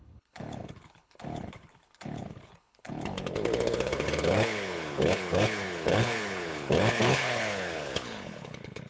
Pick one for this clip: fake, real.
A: fake